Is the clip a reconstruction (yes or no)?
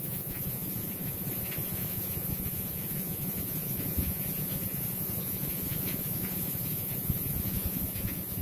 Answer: yes